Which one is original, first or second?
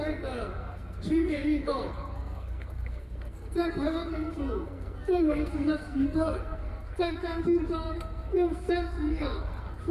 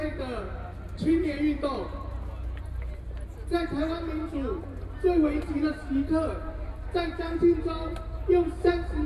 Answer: second